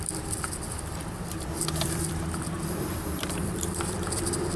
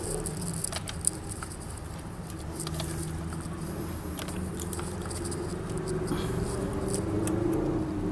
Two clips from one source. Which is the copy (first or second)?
first